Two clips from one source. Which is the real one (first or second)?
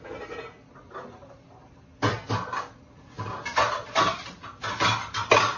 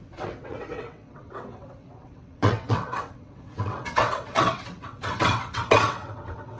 first